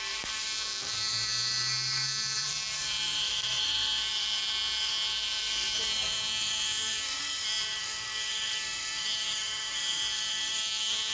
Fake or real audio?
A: fake